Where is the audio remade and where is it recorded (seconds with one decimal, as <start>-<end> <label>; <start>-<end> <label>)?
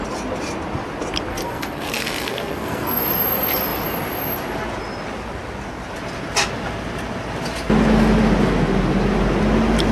0.0-1.3 recorded; 1.3-3.0 remade; 3.0-9.9 recorded